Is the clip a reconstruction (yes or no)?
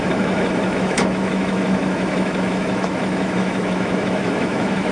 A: yes